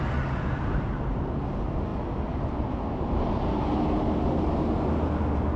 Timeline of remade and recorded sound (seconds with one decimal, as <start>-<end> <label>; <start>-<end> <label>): 0.0-5.6 recorded